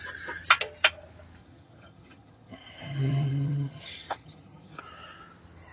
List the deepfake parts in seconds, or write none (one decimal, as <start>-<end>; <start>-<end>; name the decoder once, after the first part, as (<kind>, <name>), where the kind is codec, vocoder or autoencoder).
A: 1.4-4.8 (vocoder, HiFi-GAN)